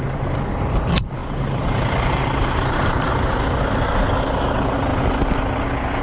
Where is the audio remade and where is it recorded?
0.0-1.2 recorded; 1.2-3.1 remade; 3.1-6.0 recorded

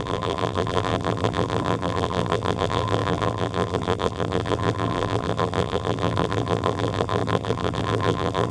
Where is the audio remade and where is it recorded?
0.0-8.5 remade

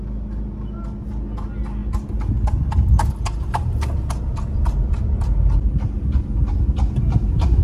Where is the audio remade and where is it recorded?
0.0-3.3 recorded; 3.3-4.2 remade; 4.2-7.6 recorded

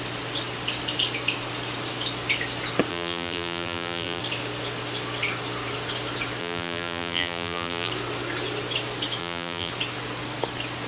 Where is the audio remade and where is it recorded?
0.0-2.9 recorded; 2.9-4.2 remade; 4.2-6.4 recorded; 6.4-7.9 remade; 7.9-9.2 recorded; 9.2-9.7 remade; 9.7-10.9 recorded